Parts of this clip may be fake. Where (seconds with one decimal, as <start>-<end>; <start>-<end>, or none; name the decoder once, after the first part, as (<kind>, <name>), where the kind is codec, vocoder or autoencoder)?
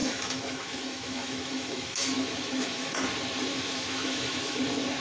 0.0-3.0 (autoencoder, DAC-VAE); 3.5-4.6